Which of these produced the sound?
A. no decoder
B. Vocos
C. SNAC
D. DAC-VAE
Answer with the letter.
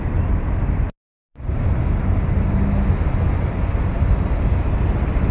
A